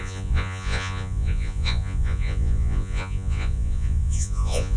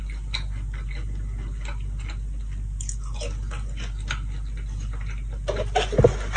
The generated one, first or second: first